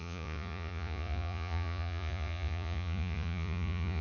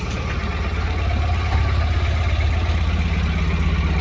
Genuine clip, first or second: second